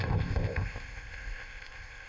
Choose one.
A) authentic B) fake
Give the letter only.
B